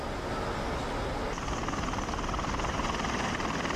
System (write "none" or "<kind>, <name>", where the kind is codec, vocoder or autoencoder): none